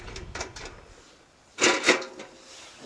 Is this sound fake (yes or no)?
no